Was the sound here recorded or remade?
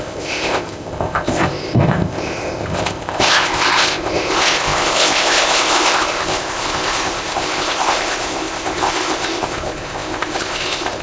remade